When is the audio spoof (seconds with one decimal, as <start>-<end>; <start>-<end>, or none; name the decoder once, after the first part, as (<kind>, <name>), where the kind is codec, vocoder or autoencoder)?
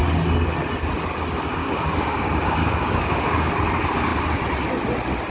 1.6-3.5 (codec, DAC)